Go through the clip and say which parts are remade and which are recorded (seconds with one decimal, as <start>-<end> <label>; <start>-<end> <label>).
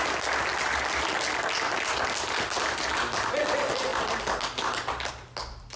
0.0-5.8 recorded